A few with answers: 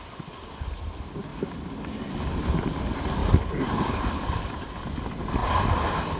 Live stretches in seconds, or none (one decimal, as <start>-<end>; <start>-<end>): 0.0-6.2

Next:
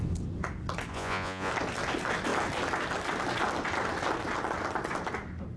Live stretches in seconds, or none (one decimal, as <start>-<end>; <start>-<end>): 0.0-0.9; 1.5-5.6

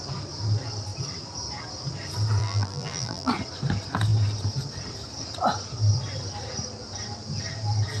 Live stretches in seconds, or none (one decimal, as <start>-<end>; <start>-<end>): 0.0-2.4; 3.3-8.0

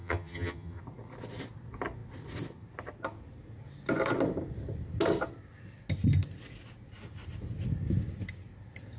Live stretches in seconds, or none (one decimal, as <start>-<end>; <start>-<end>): 0.8-9.0

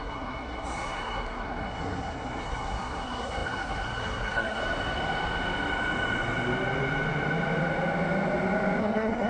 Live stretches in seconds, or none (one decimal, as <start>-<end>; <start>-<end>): 4.6-8.8